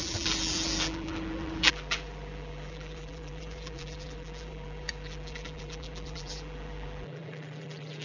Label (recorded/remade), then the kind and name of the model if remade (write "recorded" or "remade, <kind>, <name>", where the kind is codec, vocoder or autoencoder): remade, vocoder, BigVGAN v2